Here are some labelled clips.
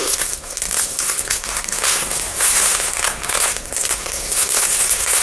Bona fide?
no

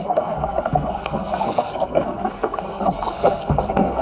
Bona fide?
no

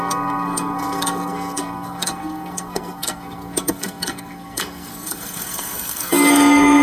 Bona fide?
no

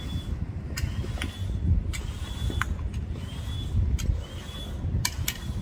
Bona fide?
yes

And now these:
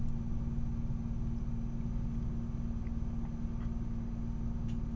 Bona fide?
yes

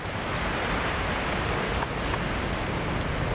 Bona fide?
yes